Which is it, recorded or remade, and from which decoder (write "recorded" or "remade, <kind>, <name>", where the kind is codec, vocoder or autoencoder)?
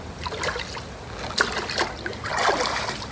recorded